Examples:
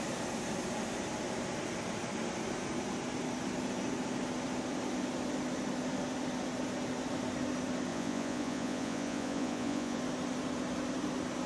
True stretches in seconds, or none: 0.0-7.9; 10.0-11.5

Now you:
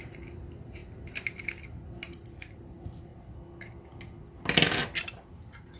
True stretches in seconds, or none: 0.0-5.8

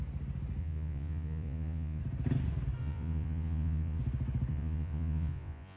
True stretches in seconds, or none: 0.0-0.6; 2.0-2.8; 4.0-4.5

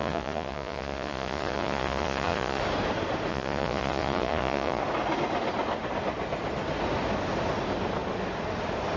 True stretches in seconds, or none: 2.6-3.3; 4.8-9.0

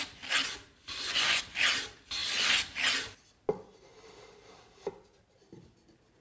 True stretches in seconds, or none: 0.0-0.8; 1.4-6.2

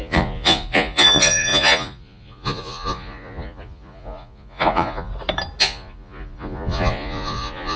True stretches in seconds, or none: 5.1-5.6